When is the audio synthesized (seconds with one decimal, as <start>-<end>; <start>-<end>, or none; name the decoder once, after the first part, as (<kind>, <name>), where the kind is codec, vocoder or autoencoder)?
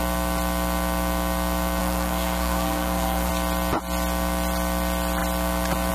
1.8-3.3 (codec, SNAC)